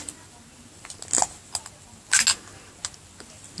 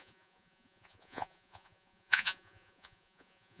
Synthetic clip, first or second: second